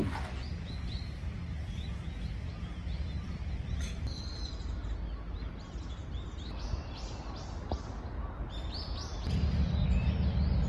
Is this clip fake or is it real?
real